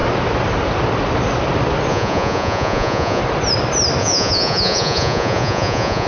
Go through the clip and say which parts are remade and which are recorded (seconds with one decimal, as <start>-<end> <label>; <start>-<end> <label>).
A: 0.0-1.9 recorded; 1.9-3.2 remade; 3.2-4.0 recorded; 4.0-6.1 remade